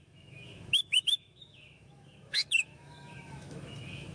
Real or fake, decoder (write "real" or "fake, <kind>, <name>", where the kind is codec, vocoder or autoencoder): fake, autoencoder, DAC-VAE